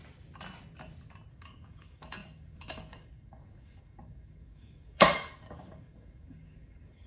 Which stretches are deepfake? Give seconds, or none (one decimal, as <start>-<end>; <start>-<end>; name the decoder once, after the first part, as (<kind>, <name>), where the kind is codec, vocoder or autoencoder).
1.3-7.1 (codec, DAC)